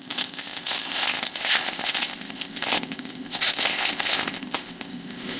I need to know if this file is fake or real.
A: fake